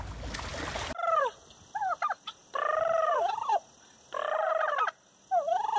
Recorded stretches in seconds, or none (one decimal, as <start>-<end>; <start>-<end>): 0.0-2.4; 4.1-5.8